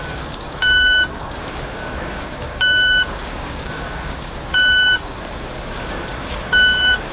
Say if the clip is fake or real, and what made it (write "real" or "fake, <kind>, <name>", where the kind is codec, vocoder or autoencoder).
fake, codec, DAC